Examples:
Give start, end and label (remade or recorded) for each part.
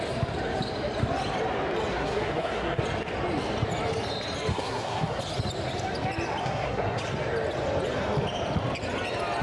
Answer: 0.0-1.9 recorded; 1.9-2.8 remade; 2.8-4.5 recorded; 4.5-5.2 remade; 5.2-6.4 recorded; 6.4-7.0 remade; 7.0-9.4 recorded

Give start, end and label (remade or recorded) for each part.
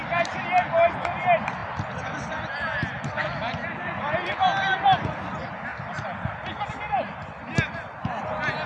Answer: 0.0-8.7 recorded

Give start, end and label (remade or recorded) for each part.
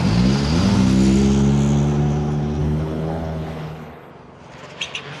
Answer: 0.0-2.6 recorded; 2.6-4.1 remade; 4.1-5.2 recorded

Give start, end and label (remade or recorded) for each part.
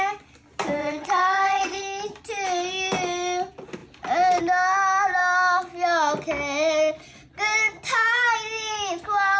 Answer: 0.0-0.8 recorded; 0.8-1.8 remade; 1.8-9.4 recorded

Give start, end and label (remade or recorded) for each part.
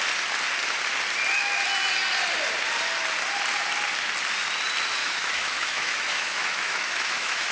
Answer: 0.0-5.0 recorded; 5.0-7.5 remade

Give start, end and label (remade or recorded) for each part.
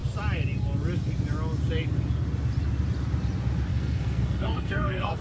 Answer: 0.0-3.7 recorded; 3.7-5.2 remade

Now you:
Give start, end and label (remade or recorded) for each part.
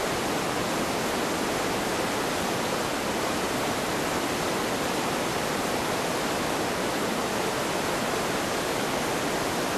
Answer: 0.0-9.8 recorded